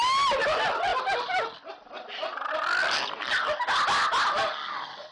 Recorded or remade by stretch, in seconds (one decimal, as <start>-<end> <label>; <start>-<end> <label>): 0.0-5.1 recorded